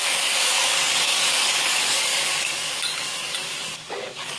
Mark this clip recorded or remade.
remade